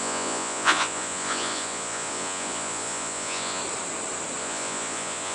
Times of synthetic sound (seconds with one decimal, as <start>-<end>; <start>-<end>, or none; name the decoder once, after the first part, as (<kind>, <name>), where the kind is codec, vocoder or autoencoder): 0.0-3.6 (vocoder, Vocos); 4.4-5.3